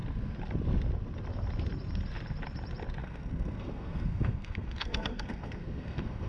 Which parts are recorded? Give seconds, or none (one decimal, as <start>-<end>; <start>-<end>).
0.0-3.0